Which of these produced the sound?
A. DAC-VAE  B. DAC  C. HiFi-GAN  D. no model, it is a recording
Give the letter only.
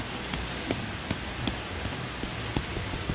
D